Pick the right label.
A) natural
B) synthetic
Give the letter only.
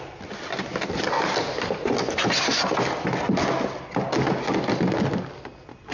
A